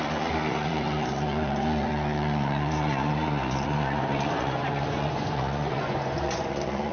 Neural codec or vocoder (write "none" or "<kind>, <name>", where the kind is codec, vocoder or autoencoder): vocoder, Vocos